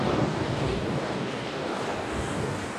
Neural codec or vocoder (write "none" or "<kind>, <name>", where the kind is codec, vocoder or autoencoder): codec, DAC